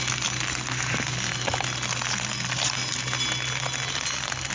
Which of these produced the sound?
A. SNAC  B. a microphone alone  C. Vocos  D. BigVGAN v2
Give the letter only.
B